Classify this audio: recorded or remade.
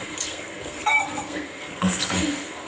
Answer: remade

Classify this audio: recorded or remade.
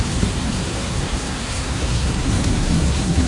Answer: remade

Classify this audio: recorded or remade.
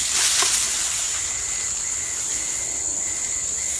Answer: recorded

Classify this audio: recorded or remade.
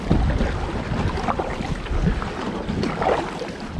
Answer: recorded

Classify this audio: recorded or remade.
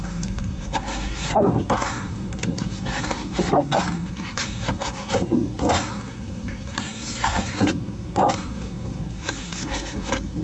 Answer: remade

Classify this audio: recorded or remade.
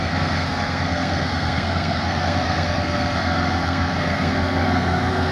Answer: remade